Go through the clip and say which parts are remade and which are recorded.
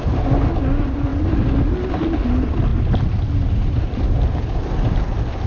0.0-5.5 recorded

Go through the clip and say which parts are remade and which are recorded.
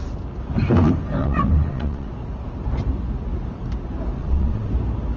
0.0-1.2 recorded; 1.2-2.1 remade; 2.1-4.2 recorded; 4.2-4.7 remade; 4.7-5.2 recorded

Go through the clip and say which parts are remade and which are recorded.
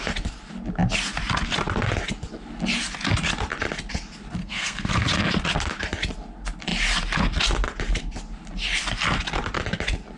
0.0-4.4 recorded; 4.4-4.9 remade; 4.9-10.2 recorded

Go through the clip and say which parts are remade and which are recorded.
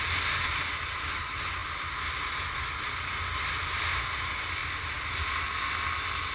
0.0-6.3 recorded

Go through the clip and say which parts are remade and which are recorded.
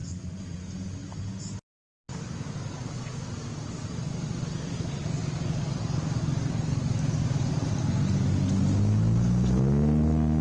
0.0-0.6 remade; 0.6-10.4 recorded